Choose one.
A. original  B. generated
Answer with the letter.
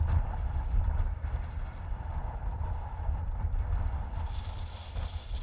A